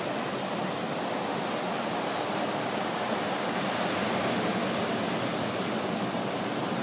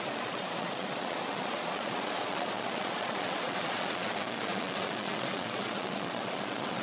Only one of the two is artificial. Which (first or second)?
second